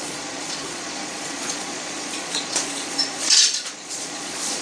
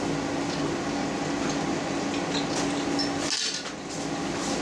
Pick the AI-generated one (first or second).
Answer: first